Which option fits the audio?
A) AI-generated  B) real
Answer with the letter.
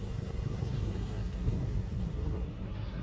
A